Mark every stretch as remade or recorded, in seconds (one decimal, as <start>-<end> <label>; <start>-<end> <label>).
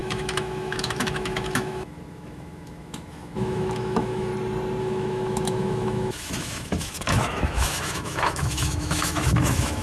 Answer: 0.0-4.3 remade; 4.3-4.8 recorded; 4.8-9.8 remade